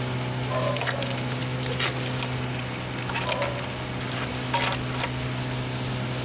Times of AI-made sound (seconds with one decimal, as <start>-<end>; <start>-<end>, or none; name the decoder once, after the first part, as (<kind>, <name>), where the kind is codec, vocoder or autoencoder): none